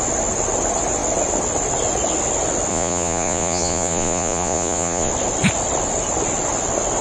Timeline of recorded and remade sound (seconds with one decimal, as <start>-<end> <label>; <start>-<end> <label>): 0.0-2.7 recorded; 2.7-5.1 remade; 5.1-7.0 recorded